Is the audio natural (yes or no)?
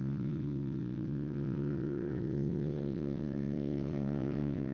no